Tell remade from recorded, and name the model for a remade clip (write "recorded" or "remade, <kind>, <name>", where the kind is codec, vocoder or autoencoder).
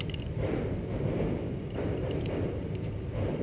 remade, vocoder, BigVGAN v2